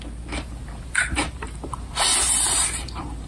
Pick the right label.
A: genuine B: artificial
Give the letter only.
B